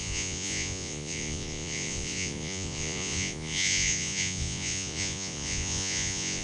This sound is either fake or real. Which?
fake